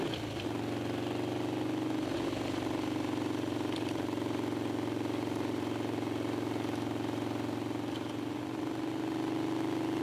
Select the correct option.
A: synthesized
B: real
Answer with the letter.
B